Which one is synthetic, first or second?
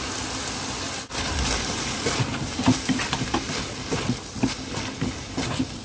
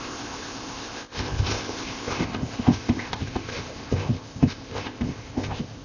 second